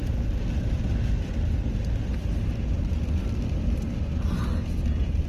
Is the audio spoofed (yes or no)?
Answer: no